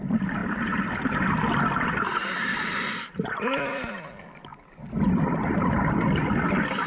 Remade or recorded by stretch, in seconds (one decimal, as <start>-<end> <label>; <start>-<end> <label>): 0.0-6.9 recorded